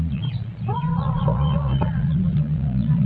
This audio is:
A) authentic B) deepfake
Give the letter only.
B